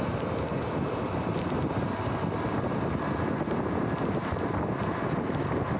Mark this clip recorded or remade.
recorded